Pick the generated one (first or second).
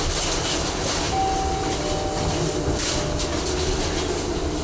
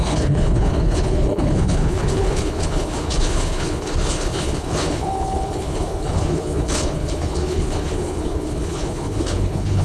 second